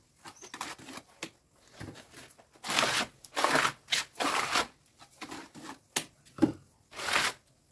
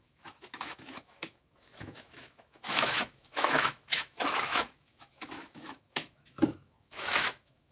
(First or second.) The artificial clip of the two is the second